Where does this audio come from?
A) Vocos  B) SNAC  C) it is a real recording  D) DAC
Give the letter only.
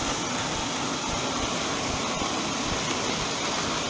C